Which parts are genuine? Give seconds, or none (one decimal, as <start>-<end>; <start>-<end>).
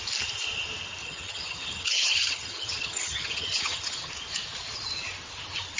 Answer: 0.0-1.0; 4.1-5.8